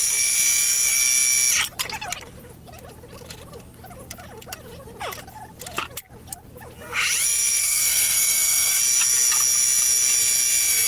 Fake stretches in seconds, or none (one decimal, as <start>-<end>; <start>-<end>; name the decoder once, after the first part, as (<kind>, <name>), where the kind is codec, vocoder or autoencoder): 7.6-8.8 (codec, SNAC)